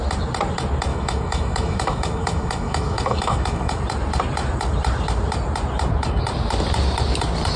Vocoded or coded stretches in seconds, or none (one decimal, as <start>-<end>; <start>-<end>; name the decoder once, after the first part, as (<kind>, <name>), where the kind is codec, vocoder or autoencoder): 0.9-3.8 (autoencoder, DAC-VAE)